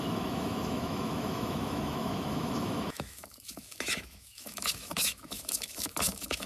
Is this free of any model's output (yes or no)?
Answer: no